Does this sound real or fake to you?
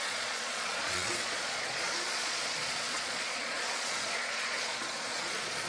fake